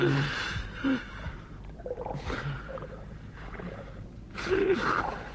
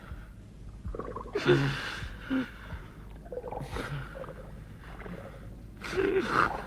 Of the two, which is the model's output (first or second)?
first